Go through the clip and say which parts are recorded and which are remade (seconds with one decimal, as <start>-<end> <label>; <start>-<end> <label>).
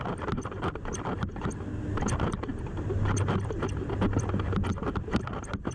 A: 0.0-5.7 recorded